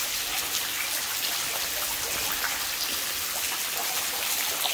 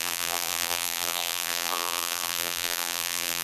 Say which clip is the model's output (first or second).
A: second